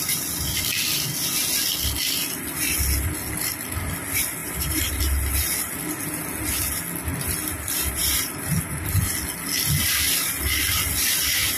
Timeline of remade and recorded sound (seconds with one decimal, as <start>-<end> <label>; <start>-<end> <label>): 0.0-4.4 recorded; 4.4-5.0 remade; 5.0-11.6 recorded